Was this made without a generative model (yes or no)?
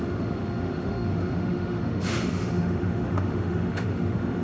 no